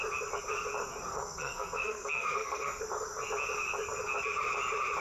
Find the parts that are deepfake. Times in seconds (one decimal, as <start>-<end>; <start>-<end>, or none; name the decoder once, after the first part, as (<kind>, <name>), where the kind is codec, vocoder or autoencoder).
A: 1.1-2.8 (codec, SNAC)